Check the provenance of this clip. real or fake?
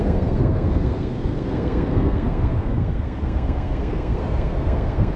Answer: fake